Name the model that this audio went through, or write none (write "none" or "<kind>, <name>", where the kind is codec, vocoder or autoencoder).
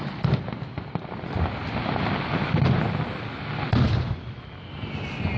none